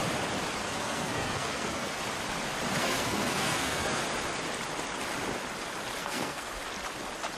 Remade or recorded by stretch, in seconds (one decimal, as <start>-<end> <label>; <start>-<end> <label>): 0.0-0.6 recorded; 0.6-2.0 remade; 2.0-2.8 recorded; 2.8-4.0 remade; 4.0-6.0 recorded; 6.0-6.5 remade; 6.5-7.4 recorded